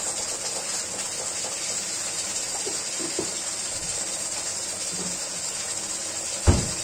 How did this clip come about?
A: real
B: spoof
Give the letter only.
A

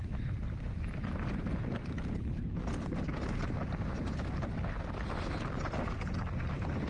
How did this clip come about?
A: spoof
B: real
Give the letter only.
B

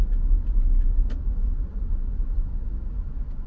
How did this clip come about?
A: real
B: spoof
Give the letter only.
A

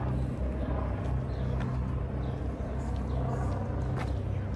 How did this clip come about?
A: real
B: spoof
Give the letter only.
A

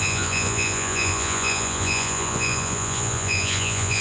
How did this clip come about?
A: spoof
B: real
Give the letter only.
A